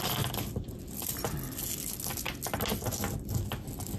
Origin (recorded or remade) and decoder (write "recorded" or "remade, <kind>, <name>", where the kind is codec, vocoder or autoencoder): recorded